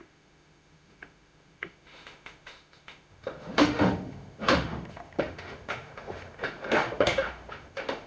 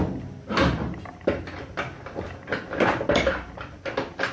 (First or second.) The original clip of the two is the second